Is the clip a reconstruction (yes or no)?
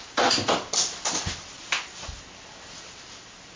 no